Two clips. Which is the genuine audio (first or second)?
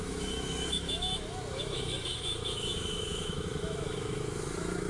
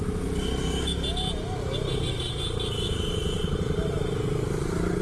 second